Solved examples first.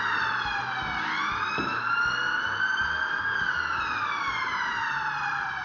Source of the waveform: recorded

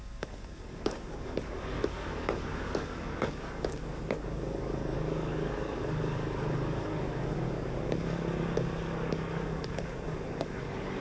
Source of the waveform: remade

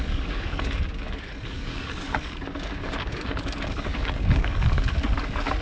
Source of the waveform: remade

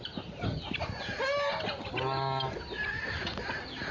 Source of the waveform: recorded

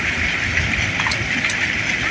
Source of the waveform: recorded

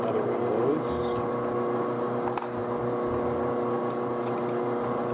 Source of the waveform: recorded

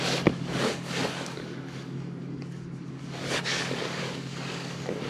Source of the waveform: remade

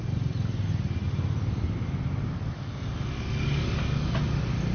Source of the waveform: recorded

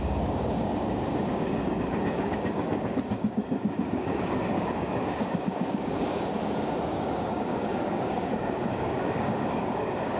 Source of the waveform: remade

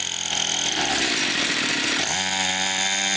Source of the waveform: recorded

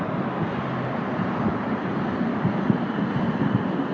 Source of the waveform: recorded